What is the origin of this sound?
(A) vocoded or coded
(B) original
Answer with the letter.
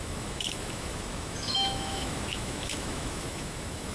A